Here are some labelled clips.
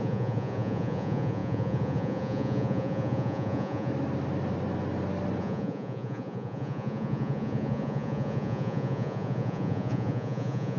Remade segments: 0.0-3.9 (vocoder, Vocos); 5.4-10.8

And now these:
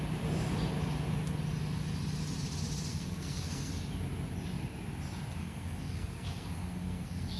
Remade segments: 2.9-3.7 (codec, SNAC); 5.4-7.4

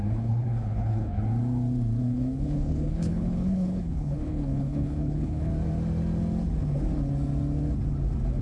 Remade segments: 0.0-1.2 (codec, HILCodec); 2.0-5.5

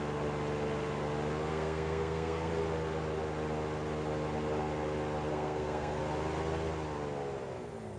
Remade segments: 1.5-2.5 (codec, SNAC); 5.3-6.0

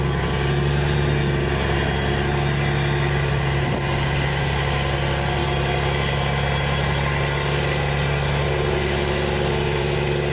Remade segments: none

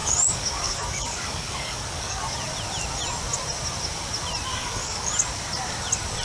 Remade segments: 0.0-2.2 (codec, DAC); 4.6-5.1